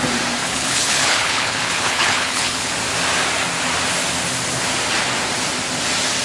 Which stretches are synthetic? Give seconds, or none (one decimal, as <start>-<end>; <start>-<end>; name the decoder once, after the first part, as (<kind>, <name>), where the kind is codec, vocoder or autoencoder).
0.4-2.7 (codec, HILCodec)